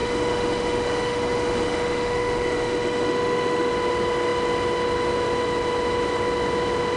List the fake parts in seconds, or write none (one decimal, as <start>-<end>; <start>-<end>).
0.0-3.7